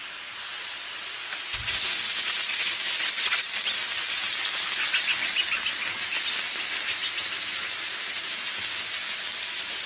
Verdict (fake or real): real